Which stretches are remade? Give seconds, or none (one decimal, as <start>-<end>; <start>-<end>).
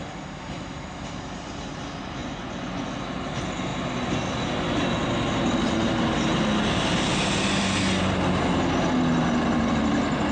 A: 2.2-3.0